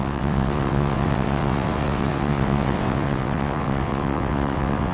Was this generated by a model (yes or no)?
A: yes